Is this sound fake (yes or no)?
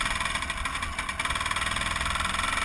no